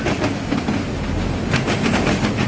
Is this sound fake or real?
real